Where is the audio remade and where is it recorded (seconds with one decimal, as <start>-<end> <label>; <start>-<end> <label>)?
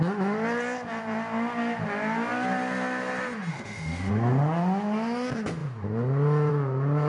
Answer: 0.0-3.5 recorded; 3.5-4.1 remade; 4.1-7.1 recorded